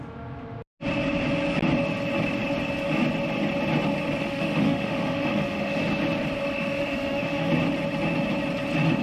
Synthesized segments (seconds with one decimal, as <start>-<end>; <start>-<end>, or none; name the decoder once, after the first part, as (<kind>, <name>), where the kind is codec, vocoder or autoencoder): 4.2-5.8 (autoencoder, DAC-VAE); 6.5-7.5